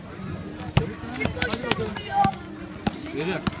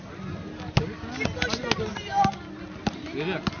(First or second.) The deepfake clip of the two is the first